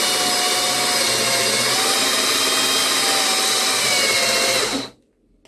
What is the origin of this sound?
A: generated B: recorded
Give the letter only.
B